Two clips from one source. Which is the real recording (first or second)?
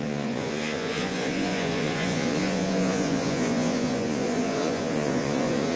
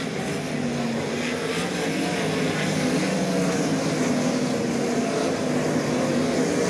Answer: second